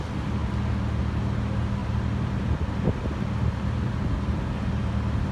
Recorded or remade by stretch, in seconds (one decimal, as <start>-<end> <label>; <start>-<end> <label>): 0.0-1.8 recorded; 1.8-5.3 remade